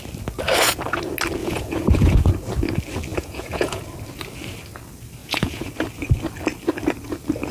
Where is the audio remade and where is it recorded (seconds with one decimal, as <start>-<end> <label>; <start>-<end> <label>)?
0.0-1.4 recorded; 1.4-2.3 remade; 2.3-3.1 recorded; 3.1-3.8 remade; 3.8-5.2 recorded; 5.2-5.7 remade; 5.7-7.5 recorded